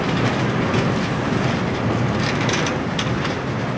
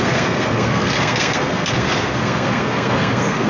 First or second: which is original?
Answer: first